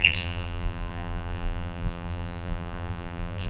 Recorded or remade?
remade